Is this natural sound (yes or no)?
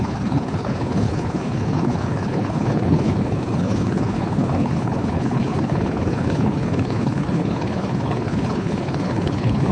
no